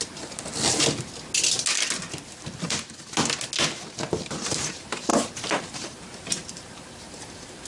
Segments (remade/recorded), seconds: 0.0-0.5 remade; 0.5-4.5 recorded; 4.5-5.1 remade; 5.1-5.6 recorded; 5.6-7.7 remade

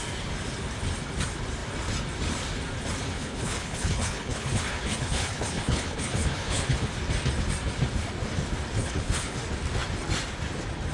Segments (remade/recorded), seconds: 0.0-3.0 recorded; 3.0-6.9 remade; 6.9-8.8 recorded; 8.8-9.4 remade; 9.4-10.9 recorded

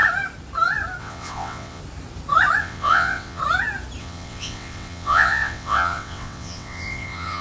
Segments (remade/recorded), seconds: 0.0-1.0 recorded; 1.0-1.8 remade; 1.8-2.6 recorded; 2.6-3.4 remade; 3.4-4.0 recorded; 4.0-7.4 remade

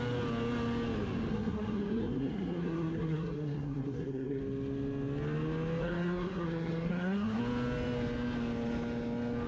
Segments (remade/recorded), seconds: 0.0-1.3 recorded; 1.3-4.4 remade; 4.4-5.8 recorded; 5.8-7.4 remade; 7.4-9.5 recorded

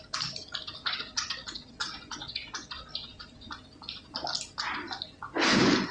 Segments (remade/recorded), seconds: 0.0-0.8 recorded; 0.8-3.5 remade; 3.5-5.9 recorded